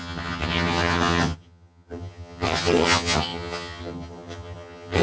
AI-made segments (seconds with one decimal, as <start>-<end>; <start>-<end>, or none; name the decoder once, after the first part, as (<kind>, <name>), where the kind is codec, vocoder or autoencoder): 0.0-5.0 (vocoder, HiFi-GAN)